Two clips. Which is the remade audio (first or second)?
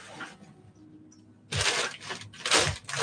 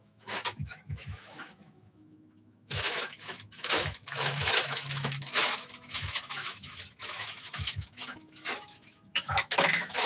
second